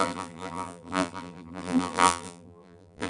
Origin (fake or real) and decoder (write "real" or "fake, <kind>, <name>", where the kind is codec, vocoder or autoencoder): fake, vocoder, BigVGAN v2